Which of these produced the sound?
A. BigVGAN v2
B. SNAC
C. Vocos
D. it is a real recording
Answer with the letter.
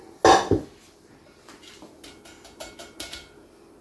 D